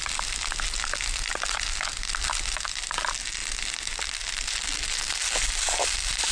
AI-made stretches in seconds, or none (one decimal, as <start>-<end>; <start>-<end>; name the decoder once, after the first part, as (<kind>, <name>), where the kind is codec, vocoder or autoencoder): none